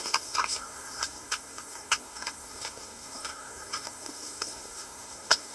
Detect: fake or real fake